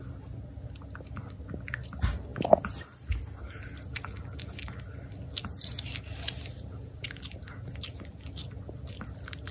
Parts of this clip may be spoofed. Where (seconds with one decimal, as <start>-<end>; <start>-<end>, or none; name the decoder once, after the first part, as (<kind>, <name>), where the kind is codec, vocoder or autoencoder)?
none

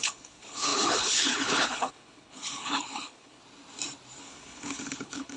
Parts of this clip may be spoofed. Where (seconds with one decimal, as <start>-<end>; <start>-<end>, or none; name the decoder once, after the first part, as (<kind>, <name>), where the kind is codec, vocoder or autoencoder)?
0.0-3.4 (codec, HILCodec); 4.2-5.4

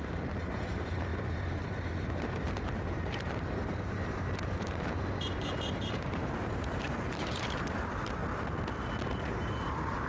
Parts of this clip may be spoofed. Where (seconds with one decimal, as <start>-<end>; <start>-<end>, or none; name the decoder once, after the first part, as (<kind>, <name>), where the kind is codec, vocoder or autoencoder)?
0.0-8.2 (vocoder, BigVGAN v2); 9.3-10.1

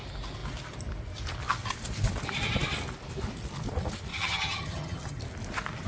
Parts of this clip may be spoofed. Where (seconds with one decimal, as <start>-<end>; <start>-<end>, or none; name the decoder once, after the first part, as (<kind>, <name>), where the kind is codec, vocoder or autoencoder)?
4.1-5.2 (vocoder, HiFi-GAN)